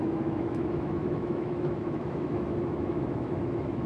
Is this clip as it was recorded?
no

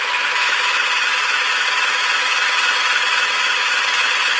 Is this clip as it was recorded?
no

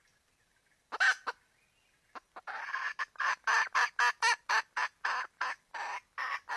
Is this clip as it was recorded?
yes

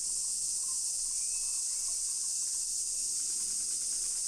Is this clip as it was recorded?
yes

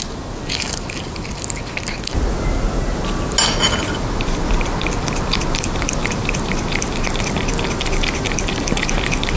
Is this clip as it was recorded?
yes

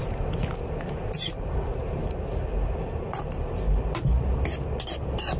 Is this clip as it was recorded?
yes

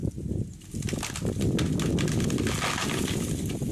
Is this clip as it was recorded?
yes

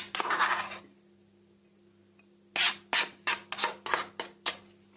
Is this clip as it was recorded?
yes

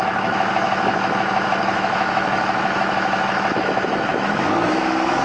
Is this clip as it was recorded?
no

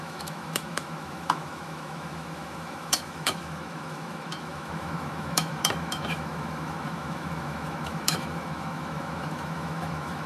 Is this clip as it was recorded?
no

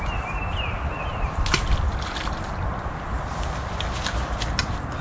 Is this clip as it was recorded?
yes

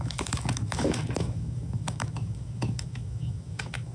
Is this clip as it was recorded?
no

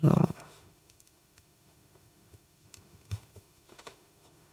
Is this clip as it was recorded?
no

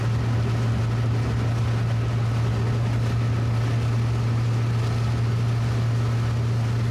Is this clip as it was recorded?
yes